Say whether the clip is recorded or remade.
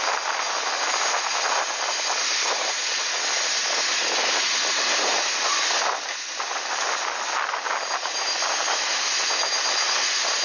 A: recorded